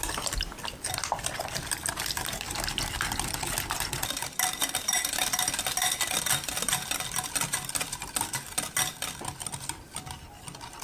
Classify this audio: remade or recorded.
recorded